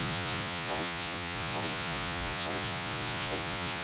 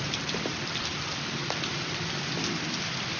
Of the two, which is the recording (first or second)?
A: second